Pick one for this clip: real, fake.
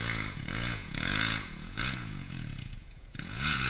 fake